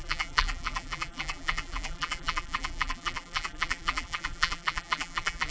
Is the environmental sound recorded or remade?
remade